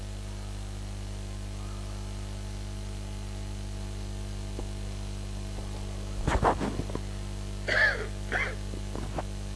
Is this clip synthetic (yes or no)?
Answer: no